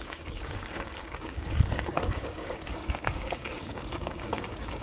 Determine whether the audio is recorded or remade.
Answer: remade